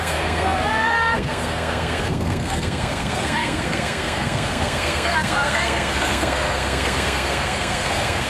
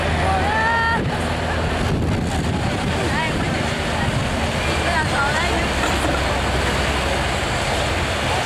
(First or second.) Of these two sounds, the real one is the second